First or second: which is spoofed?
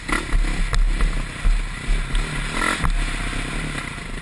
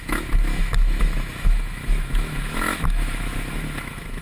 second